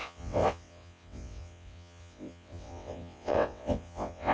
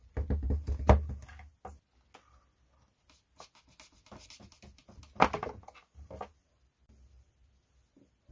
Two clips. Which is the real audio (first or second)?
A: second